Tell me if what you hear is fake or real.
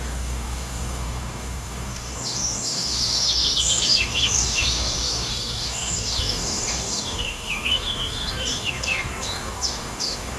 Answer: fake